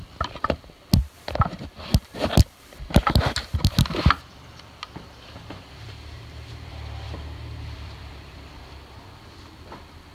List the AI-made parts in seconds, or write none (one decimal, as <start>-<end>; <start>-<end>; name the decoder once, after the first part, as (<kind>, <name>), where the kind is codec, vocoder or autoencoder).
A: 0.0-10.1 (vocoder, BigVGAN v2)